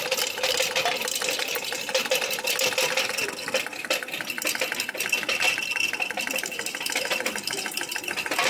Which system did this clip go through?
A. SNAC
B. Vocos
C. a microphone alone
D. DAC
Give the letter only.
C